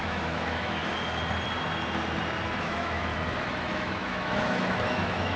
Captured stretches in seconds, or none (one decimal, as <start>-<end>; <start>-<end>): 0.8-2.6; 3.1-3.6